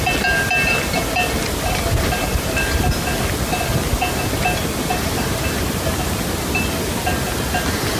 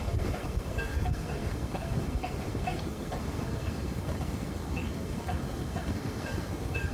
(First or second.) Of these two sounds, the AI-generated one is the second